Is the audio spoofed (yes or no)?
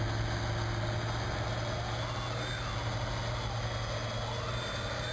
no